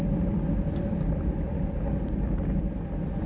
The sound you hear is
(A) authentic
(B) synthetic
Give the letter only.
A